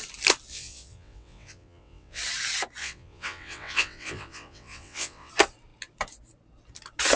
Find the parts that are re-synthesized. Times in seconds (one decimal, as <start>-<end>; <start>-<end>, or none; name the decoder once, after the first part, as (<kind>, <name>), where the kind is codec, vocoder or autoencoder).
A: 0.5-2.2 (vocoder, WaveNeXt); 2.8-5.3